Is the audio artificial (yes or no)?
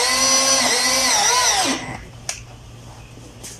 no